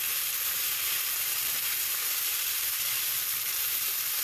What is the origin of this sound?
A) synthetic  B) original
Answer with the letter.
A